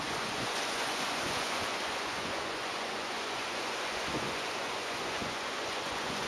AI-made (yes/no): yes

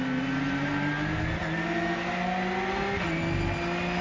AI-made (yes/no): no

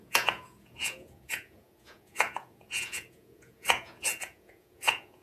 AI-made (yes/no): yes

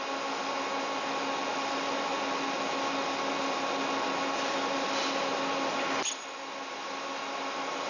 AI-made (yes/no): no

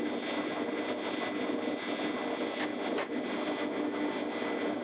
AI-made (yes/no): no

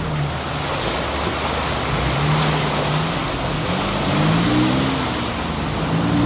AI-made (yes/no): no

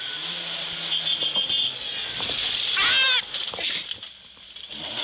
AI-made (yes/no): no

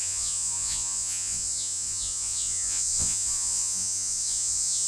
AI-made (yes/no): yes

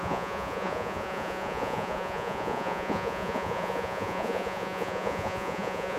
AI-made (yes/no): yes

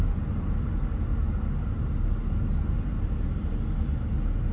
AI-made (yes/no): no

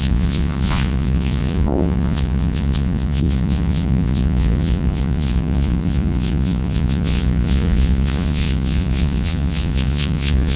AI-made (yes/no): yes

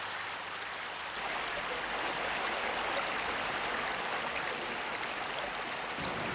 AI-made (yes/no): no